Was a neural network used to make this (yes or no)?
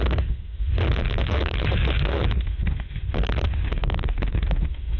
yes